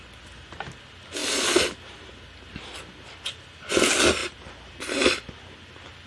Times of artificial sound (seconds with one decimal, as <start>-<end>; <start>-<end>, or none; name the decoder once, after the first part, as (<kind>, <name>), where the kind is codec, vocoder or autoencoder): none